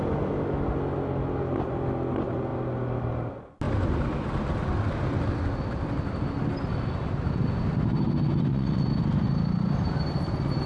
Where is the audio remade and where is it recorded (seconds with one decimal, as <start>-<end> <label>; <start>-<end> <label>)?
0.0-8.5 recorded; 8.5-9.0 remade; 9.0-10.7 recorded